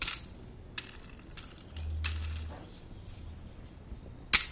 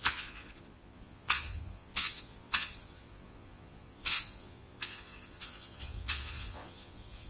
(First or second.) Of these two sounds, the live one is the first